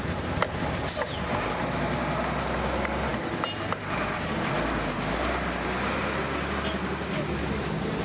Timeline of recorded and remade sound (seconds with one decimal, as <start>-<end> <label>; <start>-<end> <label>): 0.0-8.0 recorded